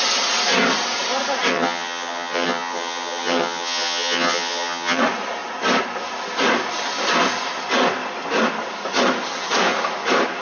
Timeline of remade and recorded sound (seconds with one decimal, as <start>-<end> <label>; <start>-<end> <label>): 0.0-1.5 recorded; 1.5-5.0 remade; 5.0-10.4 recorded